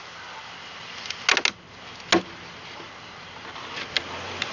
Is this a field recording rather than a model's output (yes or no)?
yes